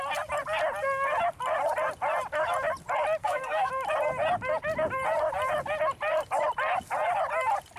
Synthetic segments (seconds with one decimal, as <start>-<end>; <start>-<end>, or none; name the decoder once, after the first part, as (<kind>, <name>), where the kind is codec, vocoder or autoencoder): 3.2-3.7 (codec, SNAC)